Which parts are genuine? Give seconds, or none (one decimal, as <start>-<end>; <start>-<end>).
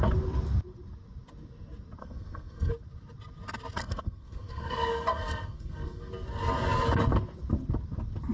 0.0-2.0; 2.7-3.8; 6.1-8.3